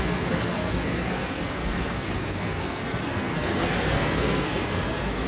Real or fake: fake